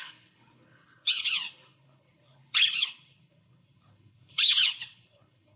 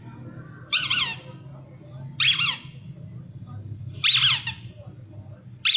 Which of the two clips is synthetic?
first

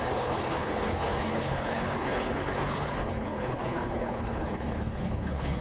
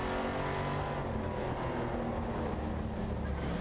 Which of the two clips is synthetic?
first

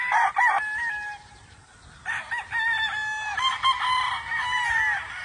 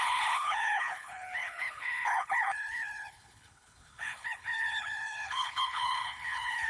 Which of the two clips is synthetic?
second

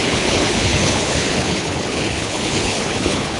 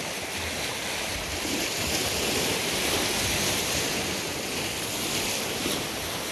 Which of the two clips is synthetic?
first